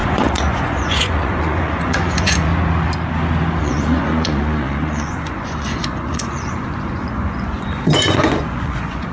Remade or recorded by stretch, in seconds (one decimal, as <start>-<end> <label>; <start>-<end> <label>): 0.0-2.5 remade; 2.5-3.6 recorded; 3.6-9.1 remade